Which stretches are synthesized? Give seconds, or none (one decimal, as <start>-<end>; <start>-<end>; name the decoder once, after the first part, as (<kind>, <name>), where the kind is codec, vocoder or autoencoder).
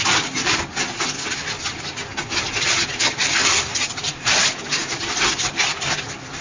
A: 0.0-0.6 (vocoder, BigVGAN v2); 3.2-5.0